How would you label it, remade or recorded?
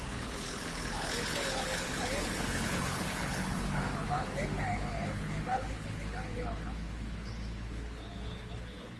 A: remade